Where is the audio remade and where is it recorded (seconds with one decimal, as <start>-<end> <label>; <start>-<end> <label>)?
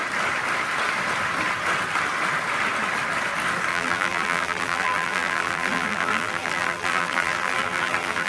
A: 0.0-3.7 recorded; 3.7-8.3 remade